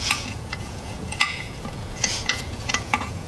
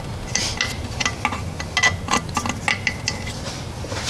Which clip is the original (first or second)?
second